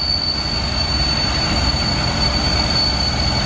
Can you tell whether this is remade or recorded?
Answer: recorded